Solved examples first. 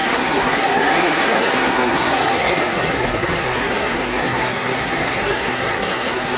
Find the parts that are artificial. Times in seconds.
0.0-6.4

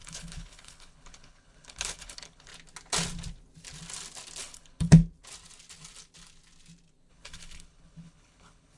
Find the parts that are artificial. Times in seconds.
0.0-2.5; 4.4-5.0; 7.1-8.8

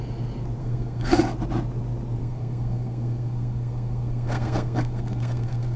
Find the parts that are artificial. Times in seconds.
0.6-1.2; 2.2-5.8